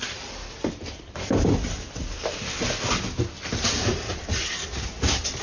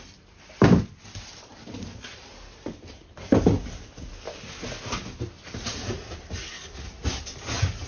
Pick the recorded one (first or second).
second